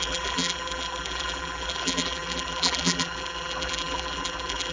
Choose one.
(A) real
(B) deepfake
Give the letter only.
B